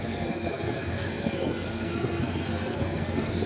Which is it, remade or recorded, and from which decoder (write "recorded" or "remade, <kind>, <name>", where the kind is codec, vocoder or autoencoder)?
remade, codec, SNAC